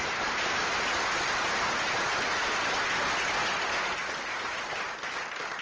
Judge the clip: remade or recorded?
recorded